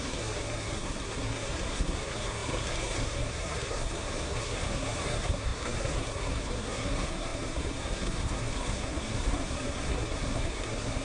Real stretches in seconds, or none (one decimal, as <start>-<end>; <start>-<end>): none